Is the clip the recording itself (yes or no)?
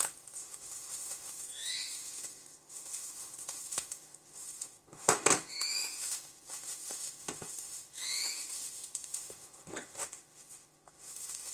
no